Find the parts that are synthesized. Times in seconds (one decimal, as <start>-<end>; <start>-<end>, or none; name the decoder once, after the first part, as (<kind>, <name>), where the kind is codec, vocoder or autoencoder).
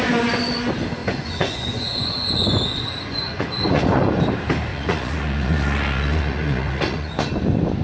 1.0-4.1 (vocoder, Vocos); 4.7-7.3